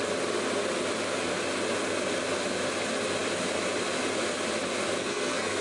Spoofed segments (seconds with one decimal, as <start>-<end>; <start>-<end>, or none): 5.0-5.6